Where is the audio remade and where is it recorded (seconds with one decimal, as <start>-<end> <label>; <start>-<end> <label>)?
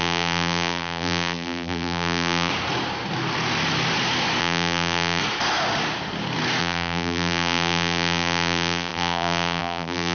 0.0-2.5 remade; 2.5-4.4 recorded; 4.4-5.2 remade; 5.2-6.6 recorded; 6.6-10.1 remade